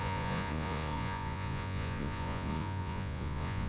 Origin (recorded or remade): remade